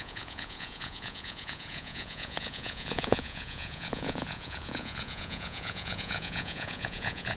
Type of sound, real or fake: fake